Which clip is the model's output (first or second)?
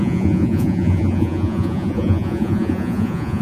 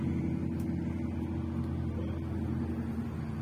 first